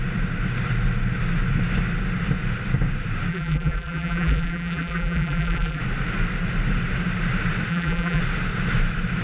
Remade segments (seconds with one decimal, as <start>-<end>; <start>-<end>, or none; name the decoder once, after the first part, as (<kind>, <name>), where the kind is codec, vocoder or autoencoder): 3.3-5.8 (vocoder, BigVGAN v2); 7.7-8.2